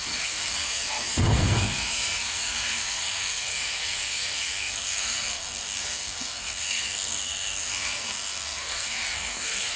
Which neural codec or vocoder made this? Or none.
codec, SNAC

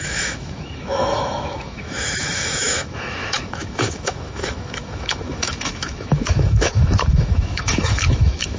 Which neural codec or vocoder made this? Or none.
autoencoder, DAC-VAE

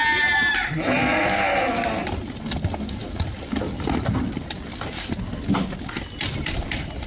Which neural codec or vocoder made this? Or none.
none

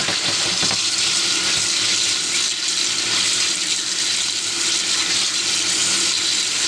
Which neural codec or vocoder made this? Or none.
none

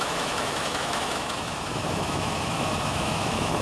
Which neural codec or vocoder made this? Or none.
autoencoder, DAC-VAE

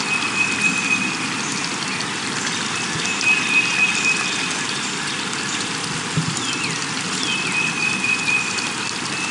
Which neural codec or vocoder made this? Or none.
none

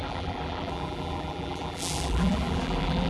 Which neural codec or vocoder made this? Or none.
vocoder, BigVGAN v2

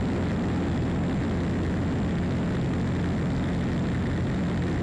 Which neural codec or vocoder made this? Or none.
none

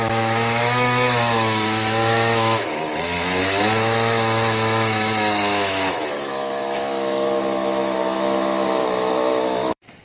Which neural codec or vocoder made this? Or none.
autoencoder, DAC-VAE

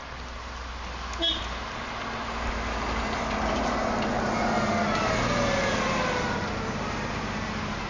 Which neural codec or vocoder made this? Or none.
none